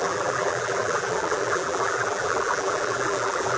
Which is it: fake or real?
fake